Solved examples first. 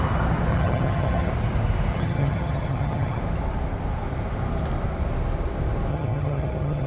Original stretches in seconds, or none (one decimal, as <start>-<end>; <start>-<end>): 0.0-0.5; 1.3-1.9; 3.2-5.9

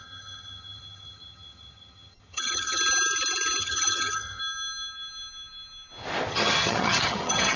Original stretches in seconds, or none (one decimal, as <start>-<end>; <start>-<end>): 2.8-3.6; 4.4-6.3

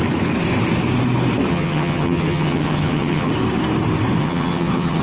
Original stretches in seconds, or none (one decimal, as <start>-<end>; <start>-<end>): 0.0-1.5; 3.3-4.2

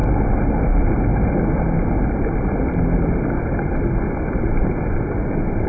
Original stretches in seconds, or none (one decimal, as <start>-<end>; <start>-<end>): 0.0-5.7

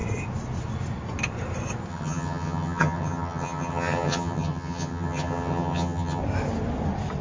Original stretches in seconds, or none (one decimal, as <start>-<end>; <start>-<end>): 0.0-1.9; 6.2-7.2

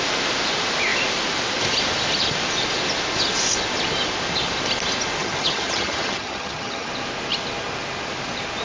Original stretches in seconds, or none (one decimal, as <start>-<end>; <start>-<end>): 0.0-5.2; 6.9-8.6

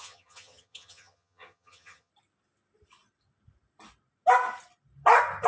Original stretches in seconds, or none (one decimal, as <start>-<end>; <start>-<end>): 2.1-5.5